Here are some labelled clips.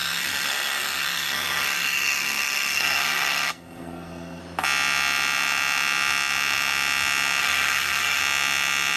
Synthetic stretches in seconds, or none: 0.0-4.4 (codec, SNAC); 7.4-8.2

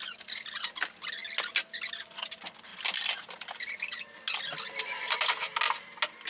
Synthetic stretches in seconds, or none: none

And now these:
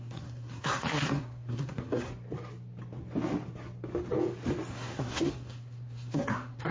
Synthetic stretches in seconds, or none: 0.0-2.1 (codec, SNAC); 4.7-6.7

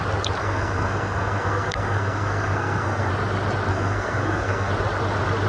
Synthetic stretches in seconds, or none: 0.4-3.1 (codec, SNAC); 3.7-4.7

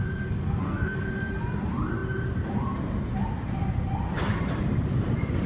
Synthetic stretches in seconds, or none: 0.4-1.0 (codec, SNAC)

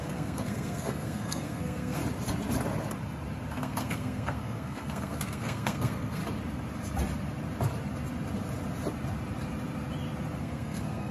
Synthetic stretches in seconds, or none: 0.0-2.0 (codec, SNAC); 3.5-6.2; 10.4-11.1

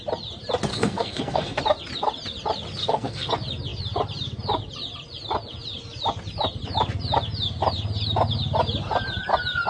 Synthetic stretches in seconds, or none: 0.7-1.6 (codec, SNAC); 2.8-3.3